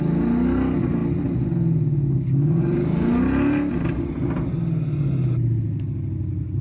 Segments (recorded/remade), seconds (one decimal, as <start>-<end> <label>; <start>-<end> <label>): 0.0-6.6 recorded